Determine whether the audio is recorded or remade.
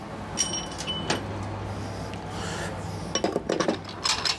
recorded